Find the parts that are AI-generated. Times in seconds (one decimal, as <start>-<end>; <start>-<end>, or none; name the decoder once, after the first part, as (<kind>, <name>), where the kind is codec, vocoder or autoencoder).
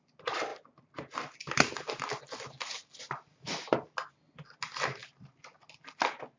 none